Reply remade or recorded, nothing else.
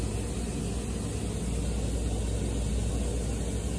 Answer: recorded